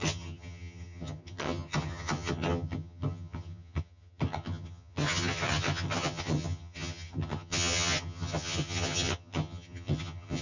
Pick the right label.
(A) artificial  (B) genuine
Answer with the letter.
A